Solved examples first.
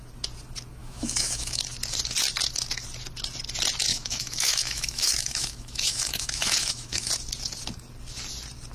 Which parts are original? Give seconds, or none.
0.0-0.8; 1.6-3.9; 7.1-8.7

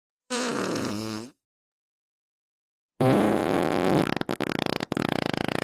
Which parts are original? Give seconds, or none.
3.4-4.8

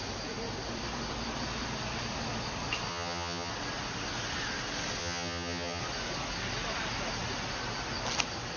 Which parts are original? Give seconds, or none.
0.0-2.9; 3.5-5.0; 5.8-8.6

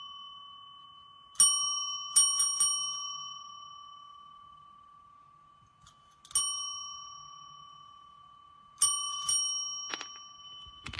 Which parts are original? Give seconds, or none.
0.0-11.0

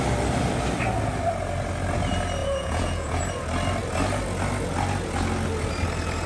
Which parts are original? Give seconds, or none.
0.0-2.4; 3.2-6.3

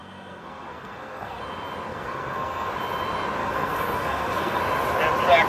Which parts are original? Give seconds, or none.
1.4-1.9; 2.7-3.4; 4.6-5.5